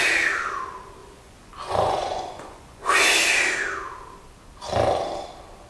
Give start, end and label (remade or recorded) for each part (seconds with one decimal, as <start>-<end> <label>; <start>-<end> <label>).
0.0-1.0 recorded; 1.0-2.9 remade; 2.9-5.7 recorded